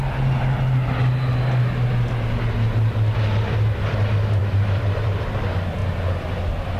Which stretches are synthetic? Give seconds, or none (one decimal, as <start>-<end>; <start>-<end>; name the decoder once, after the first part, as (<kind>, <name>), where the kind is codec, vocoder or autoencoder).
4.4-5.2 (vocoder, BigVGAN v2)